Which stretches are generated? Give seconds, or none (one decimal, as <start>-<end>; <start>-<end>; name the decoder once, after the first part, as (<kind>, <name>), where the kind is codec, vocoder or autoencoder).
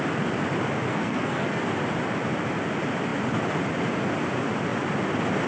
0.9-1.6 (codec, SNAC)